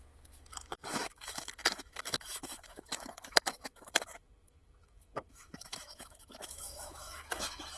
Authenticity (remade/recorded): remade